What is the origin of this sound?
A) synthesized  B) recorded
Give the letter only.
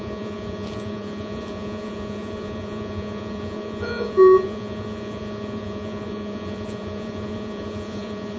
A